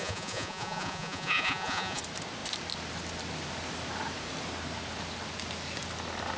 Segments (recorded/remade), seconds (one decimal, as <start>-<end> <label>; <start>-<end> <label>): 0.0-2.0 remade; 2.0-6.4 recorded